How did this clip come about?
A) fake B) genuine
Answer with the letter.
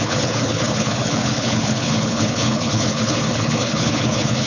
A